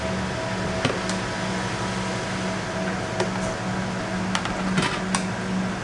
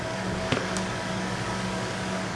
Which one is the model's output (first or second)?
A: second